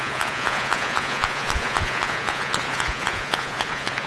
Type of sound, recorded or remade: remade